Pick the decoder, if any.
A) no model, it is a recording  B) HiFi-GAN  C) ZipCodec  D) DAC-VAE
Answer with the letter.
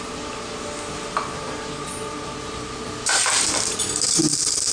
A